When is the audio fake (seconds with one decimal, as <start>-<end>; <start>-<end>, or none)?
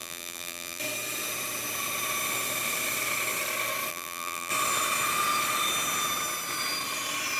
0.0-0.8; 3.9-4.5